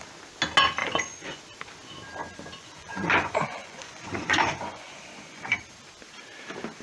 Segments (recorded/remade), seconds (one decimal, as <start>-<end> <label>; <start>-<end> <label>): 0.0-0.8 recorded; 0.8-1.4 remade; 1.4-2.2 recorded; 2.2-5.6 remade; 5.6-6.8 recorded